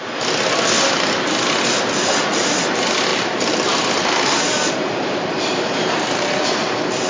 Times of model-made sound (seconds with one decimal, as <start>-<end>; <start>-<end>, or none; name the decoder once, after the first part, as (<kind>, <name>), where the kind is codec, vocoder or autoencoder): 3.1-6.4 (vocoder, BigVGAN v2)